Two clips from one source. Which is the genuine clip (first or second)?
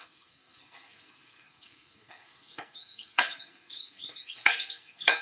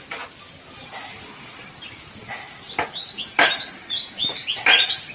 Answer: second